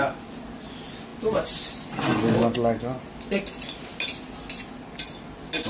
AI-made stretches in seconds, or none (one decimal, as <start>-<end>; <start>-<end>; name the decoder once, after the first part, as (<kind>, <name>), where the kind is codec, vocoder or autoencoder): none